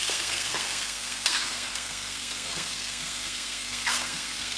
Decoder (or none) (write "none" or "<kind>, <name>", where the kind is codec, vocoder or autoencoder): codec, SNAC